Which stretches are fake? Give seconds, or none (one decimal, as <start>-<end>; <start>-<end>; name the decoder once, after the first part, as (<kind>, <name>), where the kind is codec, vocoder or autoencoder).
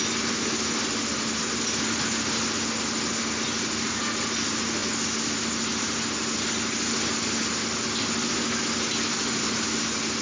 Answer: none